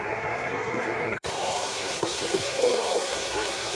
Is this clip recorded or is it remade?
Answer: remade